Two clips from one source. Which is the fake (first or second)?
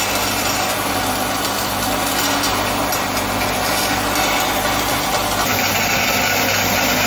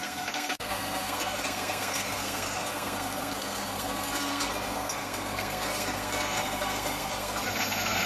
second